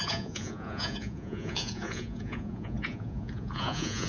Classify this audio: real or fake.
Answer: fake